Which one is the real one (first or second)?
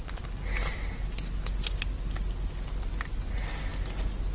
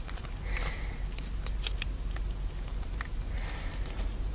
first